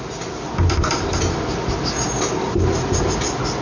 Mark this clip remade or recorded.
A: recorded